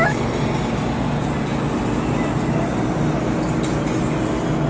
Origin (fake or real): real